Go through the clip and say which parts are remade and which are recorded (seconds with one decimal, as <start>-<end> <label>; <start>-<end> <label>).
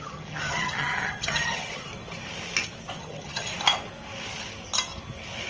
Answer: 0.0-1.9 remade; 1.9-3.0 recorded; 3.0-3.5 remade; 3.5-5.5 recorded